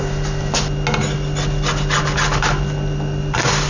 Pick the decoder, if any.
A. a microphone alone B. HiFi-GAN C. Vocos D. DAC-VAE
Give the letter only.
A